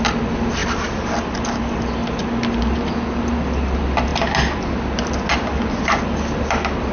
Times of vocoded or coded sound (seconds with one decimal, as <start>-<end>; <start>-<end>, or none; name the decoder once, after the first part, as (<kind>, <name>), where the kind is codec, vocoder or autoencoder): 0.0-4.1 (vocoder, BigVGAN v2); 6.0-6.9